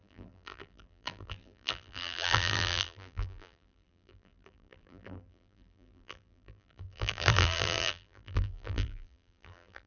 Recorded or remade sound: remade